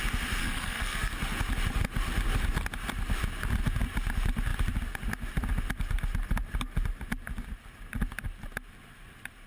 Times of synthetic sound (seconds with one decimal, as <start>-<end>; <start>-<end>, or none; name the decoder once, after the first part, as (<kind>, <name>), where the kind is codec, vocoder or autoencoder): 0.4-1.1 (codec, SNAC)